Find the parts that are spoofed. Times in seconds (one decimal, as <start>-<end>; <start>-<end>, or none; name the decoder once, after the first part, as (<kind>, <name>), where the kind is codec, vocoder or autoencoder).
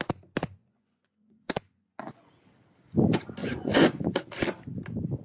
0.6-2.3 (vocoder, Vocos); 3.4-4.2